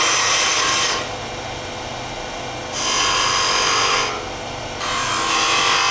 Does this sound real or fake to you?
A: real